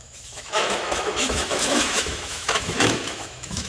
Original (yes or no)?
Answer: no